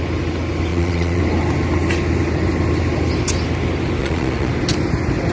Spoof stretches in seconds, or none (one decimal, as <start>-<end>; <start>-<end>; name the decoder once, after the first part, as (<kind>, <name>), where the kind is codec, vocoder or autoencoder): 0.7-1.2 (vocoder, Vocos); 4.0-4.5